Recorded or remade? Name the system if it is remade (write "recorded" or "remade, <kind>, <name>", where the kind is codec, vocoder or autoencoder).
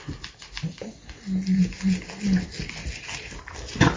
recorded